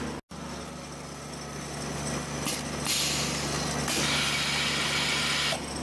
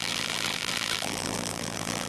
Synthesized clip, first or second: second